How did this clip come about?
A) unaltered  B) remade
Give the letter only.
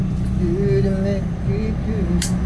A